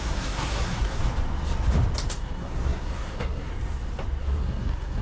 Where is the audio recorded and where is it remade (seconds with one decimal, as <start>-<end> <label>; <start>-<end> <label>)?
0.0-1.0 remade; 1.0-2.1 recorded; 2.1-3.5 remade; 3.5-4.2 recorded; 4.2-5.0 remade